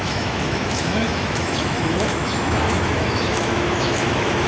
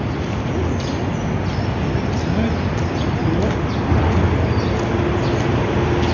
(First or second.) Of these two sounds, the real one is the second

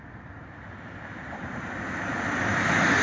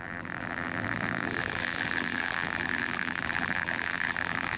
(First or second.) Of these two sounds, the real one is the first